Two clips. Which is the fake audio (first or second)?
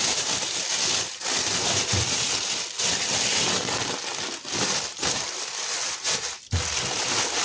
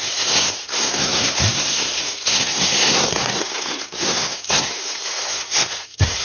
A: second